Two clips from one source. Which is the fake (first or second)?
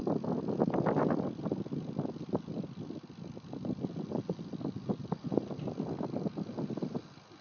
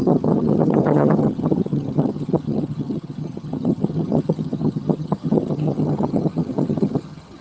second